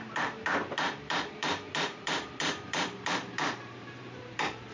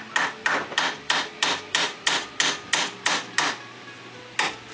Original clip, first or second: second